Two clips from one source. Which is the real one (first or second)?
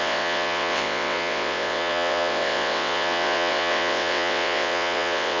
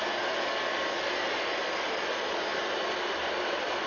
second